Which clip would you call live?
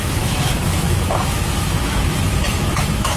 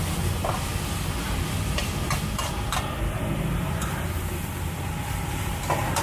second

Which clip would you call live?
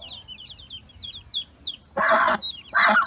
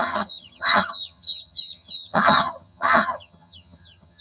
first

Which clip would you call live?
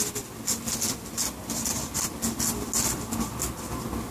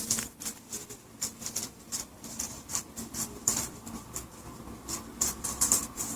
first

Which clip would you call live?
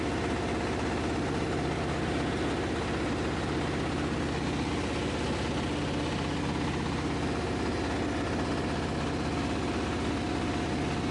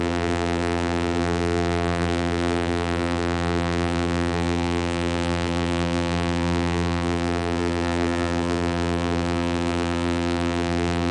first